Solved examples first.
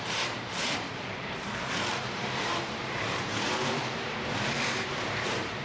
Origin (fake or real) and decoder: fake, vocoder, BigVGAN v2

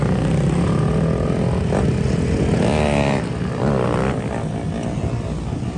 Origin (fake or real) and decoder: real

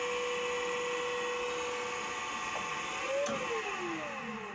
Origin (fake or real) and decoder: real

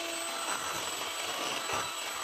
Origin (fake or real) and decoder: real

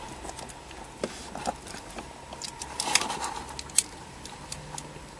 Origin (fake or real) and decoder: real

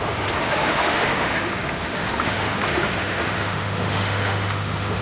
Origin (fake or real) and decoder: fake, autoencoder, DAC-VAE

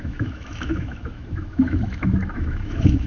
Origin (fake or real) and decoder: fake, autoencoder, DAC-VAE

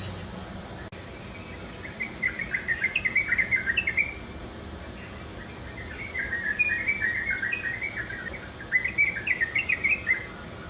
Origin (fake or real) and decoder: real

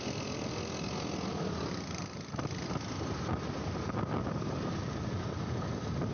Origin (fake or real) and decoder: real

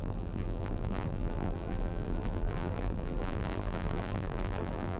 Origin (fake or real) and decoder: fake, vocoder, BigVGAN v2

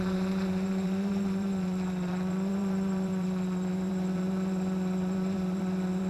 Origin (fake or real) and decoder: fake, vocoder, BigVGAN v2